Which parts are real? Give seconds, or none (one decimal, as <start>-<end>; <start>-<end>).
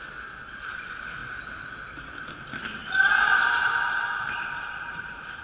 1.2-2.0